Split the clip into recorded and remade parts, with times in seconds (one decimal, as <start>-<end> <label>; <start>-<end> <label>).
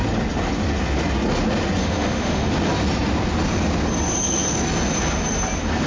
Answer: 0.0-1.8 recorded; 1.8-2.5 remade; 2.5-5.9 recorded